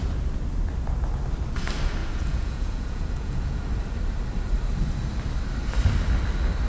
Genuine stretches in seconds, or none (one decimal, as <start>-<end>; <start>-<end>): 0.0-2.0; 3.6-6.7